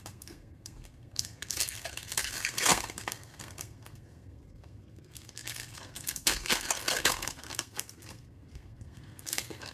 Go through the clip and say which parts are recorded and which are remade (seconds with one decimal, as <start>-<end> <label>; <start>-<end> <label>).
0.0-9.7 remade